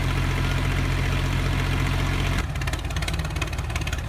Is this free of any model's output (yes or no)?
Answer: yes